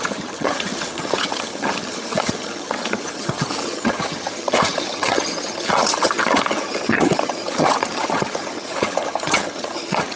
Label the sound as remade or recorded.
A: remade